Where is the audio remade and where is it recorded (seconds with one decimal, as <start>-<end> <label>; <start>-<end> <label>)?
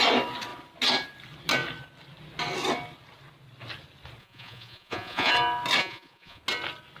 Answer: 0.0-4.2 recorded; 4.2-5.3 remade; 5.3-5.8 recorded; 5.8-6.4 remade; 6.4-7.0 recorded